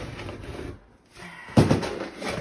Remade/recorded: recorded